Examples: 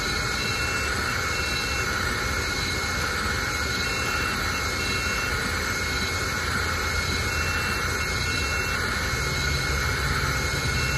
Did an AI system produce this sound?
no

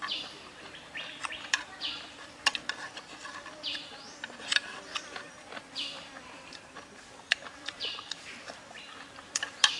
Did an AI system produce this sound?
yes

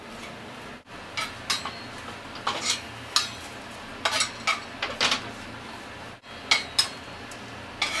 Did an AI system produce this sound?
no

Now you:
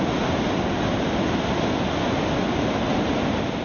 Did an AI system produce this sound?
no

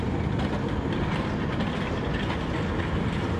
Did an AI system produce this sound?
no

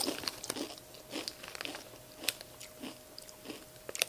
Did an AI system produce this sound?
no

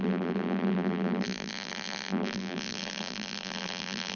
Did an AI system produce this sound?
yes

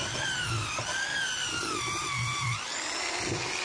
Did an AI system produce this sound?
no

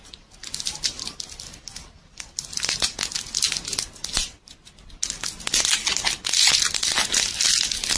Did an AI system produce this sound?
no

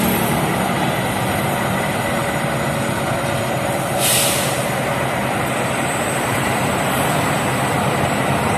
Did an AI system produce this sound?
no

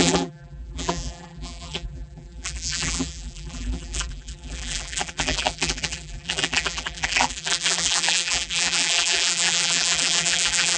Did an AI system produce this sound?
yes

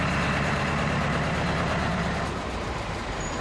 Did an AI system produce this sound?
yes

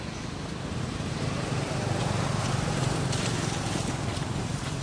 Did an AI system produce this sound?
yes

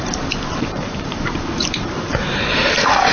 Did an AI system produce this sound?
yes